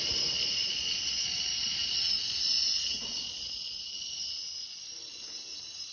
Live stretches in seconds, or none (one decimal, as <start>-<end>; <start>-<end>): 0.0-5.9